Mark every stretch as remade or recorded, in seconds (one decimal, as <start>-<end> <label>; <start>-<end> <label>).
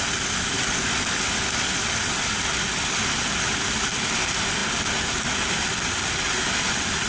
0.0-7.1 recorded